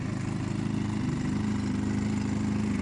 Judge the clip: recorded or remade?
recorded